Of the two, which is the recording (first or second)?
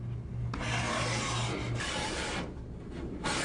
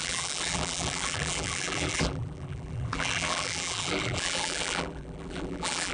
first